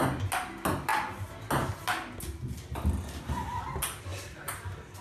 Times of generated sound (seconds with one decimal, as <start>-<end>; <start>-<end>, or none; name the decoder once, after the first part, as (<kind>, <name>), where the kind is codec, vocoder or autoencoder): none